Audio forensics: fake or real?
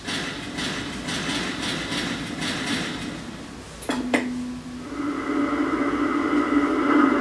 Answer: real